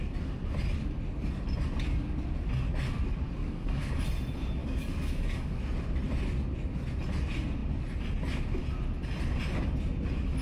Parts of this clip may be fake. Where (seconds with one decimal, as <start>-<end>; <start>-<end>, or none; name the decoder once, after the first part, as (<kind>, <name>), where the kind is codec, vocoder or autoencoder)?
3.4-4.0 (codec, DAC); 4.6-5.6